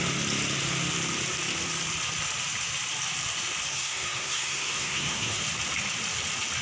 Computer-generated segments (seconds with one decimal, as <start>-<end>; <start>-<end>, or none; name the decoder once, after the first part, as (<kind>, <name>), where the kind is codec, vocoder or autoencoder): 3.7-5.4 (codec, SNAC)